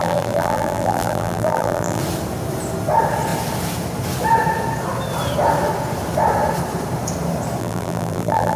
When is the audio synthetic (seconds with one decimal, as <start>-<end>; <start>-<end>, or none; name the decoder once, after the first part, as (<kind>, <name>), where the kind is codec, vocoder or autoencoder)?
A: 0.0-2.0 (vocoder, BigVGAN v2); 7.6-8.6